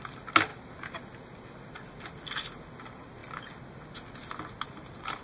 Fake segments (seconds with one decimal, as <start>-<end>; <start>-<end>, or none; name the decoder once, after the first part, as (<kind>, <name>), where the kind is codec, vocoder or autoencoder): none